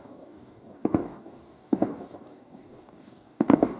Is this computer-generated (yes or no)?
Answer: yes